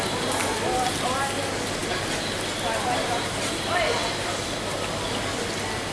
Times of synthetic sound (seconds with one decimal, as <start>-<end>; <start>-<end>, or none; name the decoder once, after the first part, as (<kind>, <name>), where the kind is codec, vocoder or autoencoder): none